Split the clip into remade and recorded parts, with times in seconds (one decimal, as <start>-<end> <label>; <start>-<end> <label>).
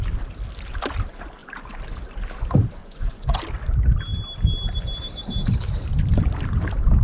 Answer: 0.0-2.8 recorded; 2.8-3.4 remade; 3.4-7.0 recorded